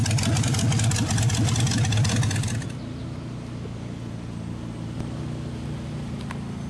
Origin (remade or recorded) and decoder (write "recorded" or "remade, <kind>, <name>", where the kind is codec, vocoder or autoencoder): recorded